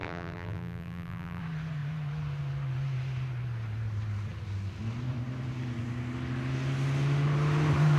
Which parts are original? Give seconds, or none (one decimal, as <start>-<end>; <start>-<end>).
1.4-8.0